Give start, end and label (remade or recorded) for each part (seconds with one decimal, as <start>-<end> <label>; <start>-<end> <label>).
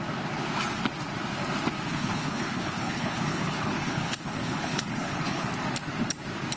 0.0-1.9 recorded; 1.9-5.5 remade; 5.5-6.6 recorded